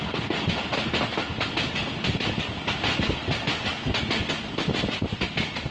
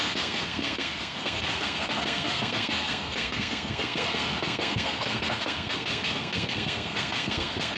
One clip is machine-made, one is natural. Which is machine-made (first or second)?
second